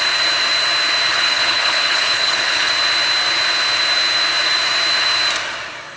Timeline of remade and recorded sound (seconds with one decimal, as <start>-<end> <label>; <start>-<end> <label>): 0.0-1.1 recorded; 1.1-2.7 remade; 2.7-6.0 recorded